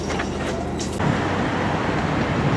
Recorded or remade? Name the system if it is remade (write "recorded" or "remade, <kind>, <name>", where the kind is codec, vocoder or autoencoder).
recorded